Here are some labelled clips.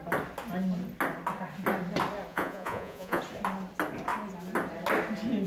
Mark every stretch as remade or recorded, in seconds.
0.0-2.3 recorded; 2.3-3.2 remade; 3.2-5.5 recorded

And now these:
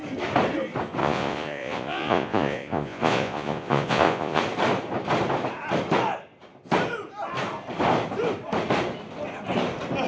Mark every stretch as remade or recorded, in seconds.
0.0-1.0 recorded; 1.0-4.4 remade; 4.4-10.1 recorded

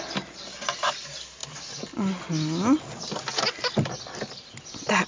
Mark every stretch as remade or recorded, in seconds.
0.0-5.1 recorded

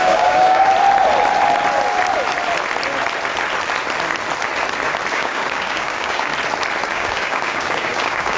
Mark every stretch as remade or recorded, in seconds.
0.0-0.7 remade; 0.7-5.1 recorded; 5.1-6.3 remade; 6.3-6.9 recorded; 6.9-8.4 remade